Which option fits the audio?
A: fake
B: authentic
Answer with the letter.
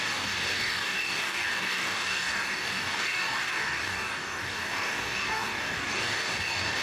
A